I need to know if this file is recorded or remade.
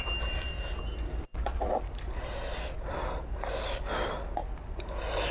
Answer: recorded